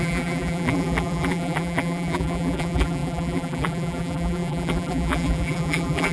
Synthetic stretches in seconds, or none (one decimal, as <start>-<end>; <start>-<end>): 0.0-6.1